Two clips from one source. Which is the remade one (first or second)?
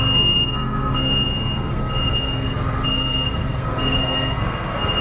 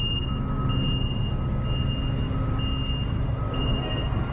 first